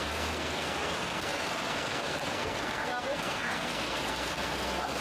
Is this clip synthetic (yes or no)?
yes